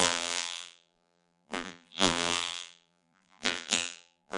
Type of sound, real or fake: fake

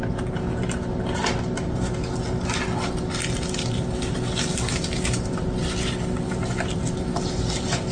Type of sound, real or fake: real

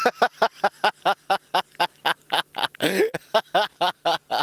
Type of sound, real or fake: real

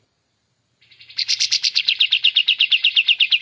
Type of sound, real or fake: fake